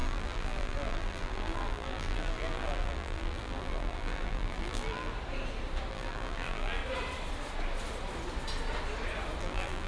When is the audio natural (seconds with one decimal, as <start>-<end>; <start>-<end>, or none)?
5.1-5.9; 6.8-9.4